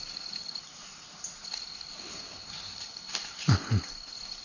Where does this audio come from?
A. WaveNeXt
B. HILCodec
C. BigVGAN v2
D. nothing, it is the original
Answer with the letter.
B